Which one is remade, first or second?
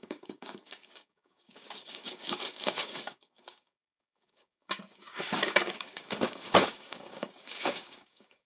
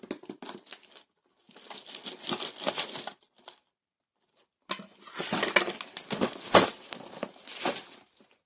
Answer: first